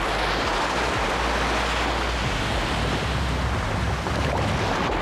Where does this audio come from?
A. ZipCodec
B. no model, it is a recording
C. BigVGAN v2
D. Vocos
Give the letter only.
B